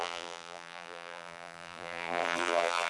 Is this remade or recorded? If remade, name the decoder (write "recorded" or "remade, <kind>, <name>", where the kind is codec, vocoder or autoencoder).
remade, vocoder, BigVGAN v2